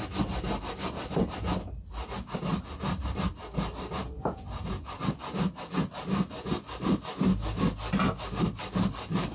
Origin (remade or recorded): recorded